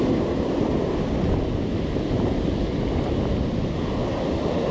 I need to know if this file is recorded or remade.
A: recorded